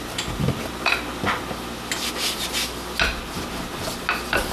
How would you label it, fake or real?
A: real